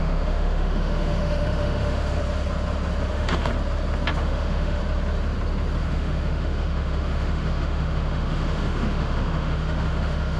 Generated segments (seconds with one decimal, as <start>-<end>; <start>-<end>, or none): 0.0-2.2; 3.1-3.5; 4.1-4.8; 5.8-10.4